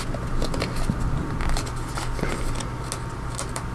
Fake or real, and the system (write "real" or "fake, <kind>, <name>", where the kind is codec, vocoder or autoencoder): real